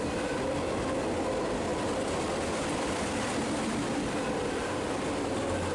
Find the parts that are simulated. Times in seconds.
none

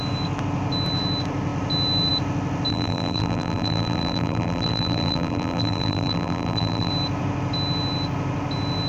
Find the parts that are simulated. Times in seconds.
2.7-6.9 (vocoder, BigVGAN v2)

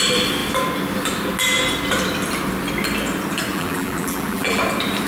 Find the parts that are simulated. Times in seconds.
3.5-4.6 (vocoder, BigVGAN v2)

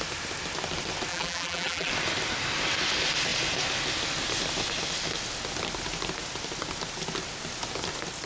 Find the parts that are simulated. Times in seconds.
1.1-1.9 (vocoder, BigVGAN v2)

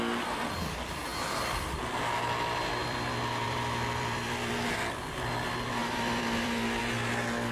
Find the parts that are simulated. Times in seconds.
1.1-1.8 (vocoder, BigVGAN v2); 2.8-4.5; 5.8-6.8